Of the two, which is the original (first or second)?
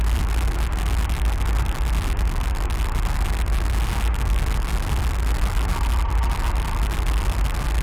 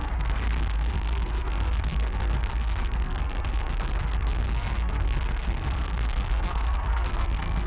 first